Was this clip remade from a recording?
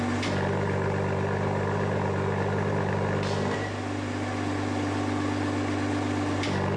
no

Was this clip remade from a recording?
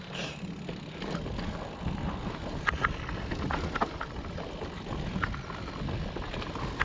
no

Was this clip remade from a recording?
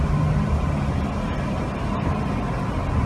no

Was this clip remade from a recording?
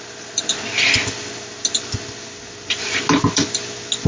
no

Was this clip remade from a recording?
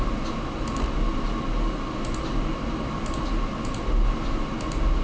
no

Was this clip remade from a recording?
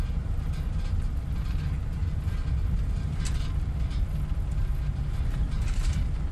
no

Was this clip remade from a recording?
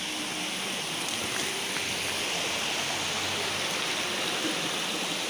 no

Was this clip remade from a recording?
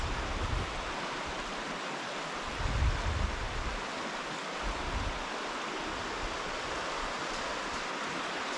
no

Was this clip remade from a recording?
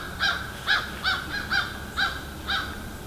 no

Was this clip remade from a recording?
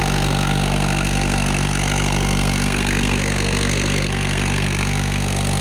yes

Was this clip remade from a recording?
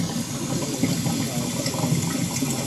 no